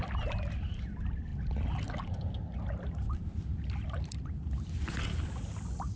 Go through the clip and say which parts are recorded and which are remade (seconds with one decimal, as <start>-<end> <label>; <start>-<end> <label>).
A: 0.0-6.0 recorded